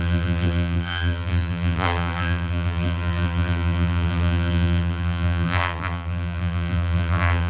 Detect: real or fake fake